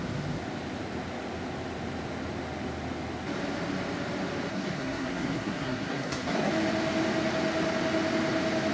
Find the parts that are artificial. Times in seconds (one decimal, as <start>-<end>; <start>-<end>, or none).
4.5-6.5